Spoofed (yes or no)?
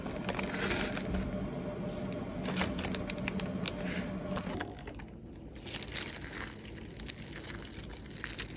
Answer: no